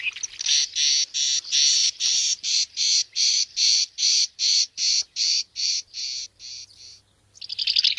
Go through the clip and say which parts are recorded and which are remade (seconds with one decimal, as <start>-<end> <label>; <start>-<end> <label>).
0.0-1.7 recorded; 1.7-6.0 remade; 6.0-8.0 recorded